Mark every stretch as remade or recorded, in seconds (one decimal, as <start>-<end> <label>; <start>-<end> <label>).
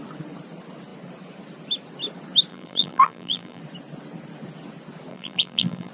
0.0-2.5 recorded; 2.5-3.6 remade; 3.6-5.1 recorded; 5.1-5.9 remade